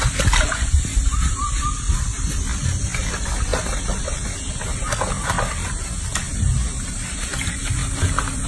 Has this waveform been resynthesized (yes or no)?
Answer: no